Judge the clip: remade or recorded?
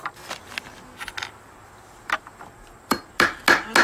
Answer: recorded